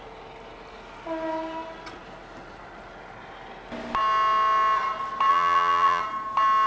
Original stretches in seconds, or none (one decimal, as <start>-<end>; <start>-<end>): 0.0-5.3; 6.0-6.7